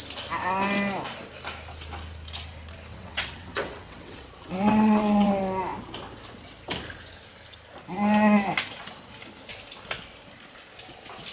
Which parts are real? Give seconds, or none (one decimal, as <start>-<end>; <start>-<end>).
0.0-2.9; 5.3-11.3